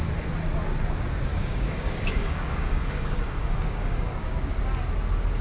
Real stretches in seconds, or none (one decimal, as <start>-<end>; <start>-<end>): 0.0-1.3; 4.5-5.4